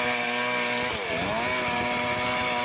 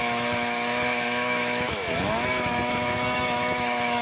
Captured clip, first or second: first